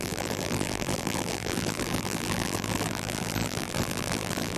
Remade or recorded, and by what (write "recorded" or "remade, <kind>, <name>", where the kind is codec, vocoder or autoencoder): remade, vocoder, BigVGAN v2